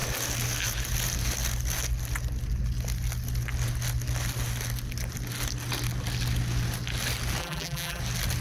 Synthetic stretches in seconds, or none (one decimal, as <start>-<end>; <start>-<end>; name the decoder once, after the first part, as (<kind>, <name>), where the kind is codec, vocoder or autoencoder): 7.4-8.0 (vocoder, BigVGAN v2)